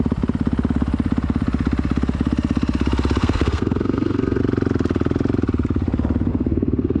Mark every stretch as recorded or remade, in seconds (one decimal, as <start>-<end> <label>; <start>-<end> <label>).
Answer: 0.0-3.2 recorded; 3.2-4.4 remade; 4.4-6.3 recorded; 6.3-7.0 remade